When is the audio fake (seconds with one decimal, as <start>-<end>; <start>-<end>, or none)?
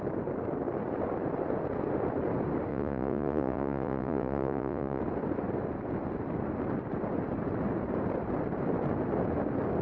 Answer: 2.7-5.0